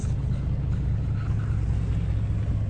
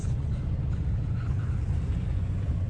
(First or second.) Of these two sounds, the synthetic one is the second